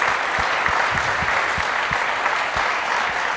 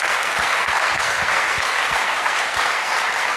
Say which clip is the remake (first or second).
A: second